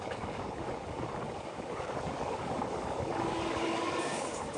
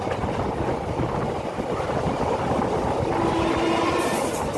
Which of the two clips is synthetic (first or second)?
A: first